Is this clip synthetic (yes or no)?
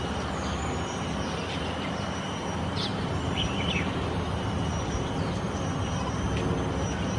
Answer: no